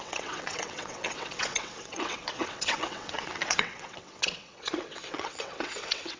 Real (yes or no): no